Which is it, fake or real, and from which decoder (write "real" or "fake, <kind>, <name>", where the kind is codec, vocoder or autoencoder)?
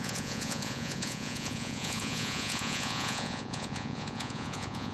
fake, vocoder, Vocos